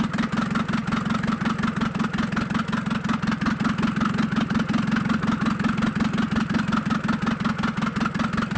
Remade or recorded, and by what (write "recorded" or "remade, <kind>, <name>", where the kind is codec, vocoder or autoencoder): recorded